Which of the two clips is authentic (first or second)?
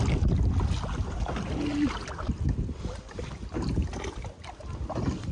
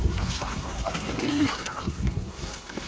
first